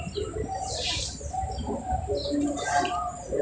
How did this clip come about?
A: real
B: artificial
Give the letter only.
A